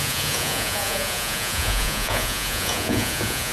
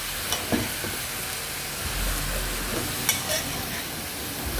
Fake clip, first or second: first